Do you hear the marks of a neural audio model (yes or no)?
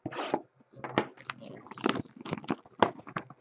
no